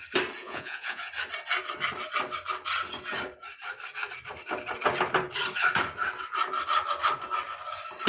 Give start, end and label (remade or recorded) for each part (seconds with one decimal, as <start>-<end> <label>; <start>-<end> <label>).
0.0-0.4 recorded; 0.4-1.1 remade; 1.1-8.1 recorded